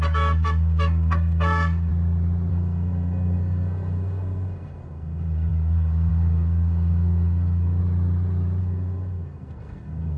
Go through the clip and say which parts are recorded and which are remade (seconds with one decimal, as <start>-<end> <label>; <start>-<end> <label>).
0.0-1.9 remade; 1.9-2.5 recorded; 2.5-7.8 remade; 7.8-8.6 recorded; 8.6-10.2 remade